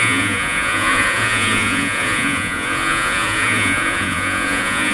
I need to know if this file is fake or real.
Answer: fake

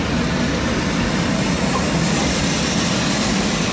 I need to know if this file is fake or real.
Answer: real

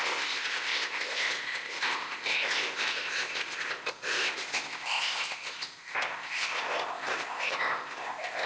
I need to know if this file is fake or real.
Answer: fake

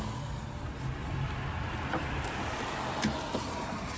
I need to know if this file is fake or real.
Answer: real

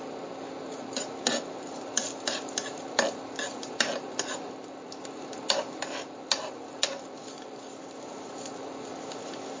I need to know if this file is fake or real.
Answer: real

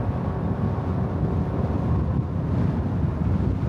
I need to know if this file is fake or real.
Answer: real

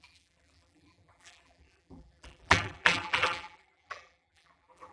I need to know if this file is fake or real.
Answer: fake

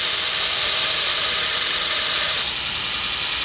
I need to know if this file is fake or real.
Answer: real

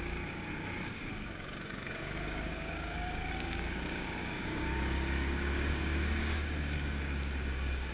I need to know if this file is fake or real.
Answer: fake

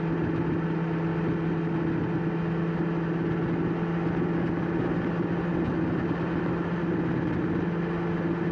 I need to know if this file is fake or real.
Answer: real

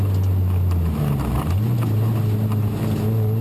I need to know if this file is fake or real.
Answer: real